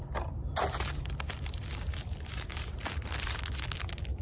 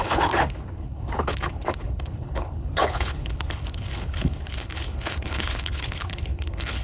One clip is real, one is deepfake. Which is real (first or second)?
first